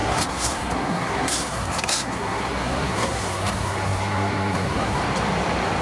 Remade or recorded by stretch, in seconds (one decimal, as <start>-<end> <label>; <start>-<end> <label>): 0.0-5.0 remade; 5.0-5.8 recorded